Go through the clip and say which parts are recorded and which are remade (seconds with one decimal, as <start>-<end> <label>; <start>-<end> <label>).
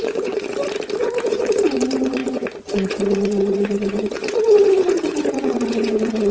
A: 0.0-0.5 remade; 0.5-1.3 recorded; 1.3-6.3 remade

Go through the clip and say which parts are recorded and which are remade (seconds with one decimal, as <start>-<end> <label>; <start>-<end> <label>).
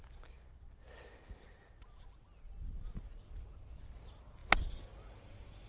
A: 0.0-5.7 recorded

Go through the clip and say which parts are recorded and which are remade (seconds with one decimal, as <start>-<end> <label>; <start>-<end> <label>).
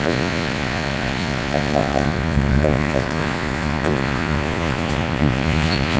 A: 0.0-6.0 remade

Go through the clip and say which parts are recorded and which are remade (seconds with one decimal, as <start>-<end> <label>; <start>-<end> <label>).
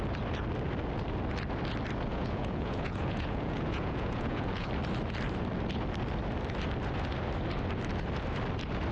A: 0.0-2.1 recorded; 2.1-4.7 remade; 4.7-8.9 recorded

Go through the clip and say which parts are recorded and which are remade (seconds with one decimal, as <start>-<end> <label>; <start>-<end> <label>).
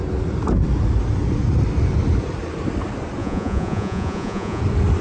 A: 0.0-3.2 recorded; 3.2-4.6 remade; 4.6-5.0 recorded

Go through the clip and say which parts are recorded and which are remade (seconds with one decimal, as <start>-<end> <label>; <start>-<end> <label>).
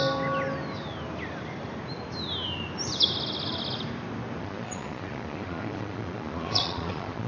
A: 0.0-4.4 recorded; 4.4-7.3 remade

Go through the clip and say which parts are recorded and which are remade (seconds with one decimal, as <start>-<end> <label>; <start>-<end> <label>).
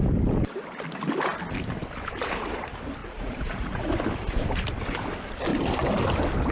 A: 0.0-3.0 recorded; 3.0-3.9 remade; 3.9-6.5 recorded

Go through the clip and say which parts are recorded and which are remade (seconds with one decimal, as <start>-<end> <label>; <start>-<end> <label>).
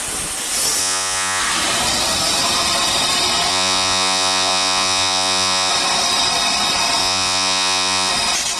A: 0.0-0.8 recorded; 0.8-1.4 remade; 1.4-3.5 recorded; 3.5-5.7 remade; 5.7-7.0 recorded; 7.0-8.1 remade; 8.1-8.6 recorded